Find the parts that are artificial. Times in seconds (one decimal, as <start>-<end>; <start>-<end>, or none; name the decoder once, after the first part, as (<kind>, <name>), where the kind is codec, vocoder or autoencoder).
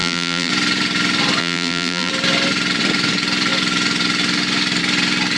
0.0-0.5 (vocoder, BigVGAN v2); 1.4-2.1